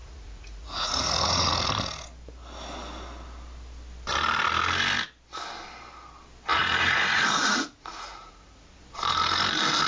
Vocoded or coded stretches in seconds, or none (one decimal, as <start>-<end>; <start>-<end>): 0.0-1.5; 6.5-8.8